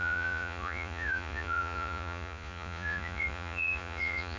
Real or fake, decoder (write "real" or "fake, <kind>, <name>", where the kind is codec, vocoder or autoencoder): fake, vocoder, Vocos